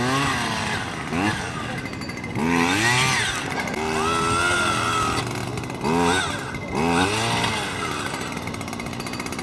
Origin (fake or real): real